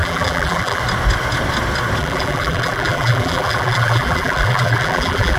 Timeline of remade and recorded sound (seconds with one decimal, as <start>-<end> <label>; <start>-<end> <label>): 0.0-0.8 remade; 0.8-2.0 recorded; 2.0-5.4 remade